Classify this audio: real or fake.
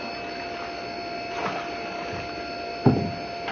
real